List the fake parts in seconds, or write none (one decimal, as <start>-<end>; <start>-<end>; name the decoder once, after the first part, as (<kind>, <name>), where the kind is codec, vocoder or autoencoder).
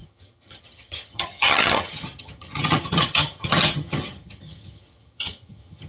0.0-5.9 (vocoder, HiFi-GAN)